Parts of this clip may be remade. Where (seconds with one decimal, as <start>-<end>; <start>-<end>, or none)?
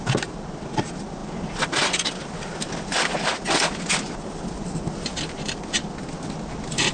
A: 0.0-3.3